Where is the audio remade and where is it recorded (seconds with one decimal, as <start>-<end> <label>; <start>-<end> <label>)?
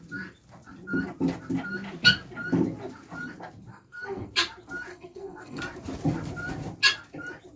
0.0-3.7 recorded; 3.7-4.3 remade; 4.3-4.9 recorded; 4.9-5.6 remade; 5.6-7.6 recorded